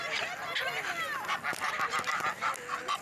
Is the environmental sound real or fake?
real